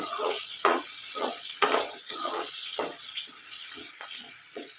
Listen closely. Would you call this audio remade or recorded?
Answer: remade